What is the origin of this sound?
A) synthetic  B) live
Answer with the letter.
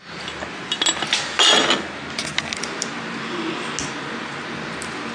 B